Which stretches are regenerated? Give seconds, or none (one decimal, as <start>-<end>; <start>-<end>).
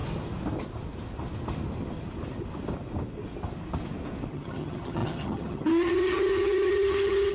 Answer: 4.3-7.3